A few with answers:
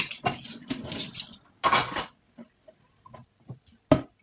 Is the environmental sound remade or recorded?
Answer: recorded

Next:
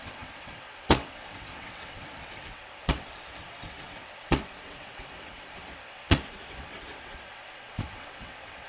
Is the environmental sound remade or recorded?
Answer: remade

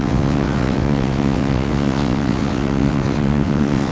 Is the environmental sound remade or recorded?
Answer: remade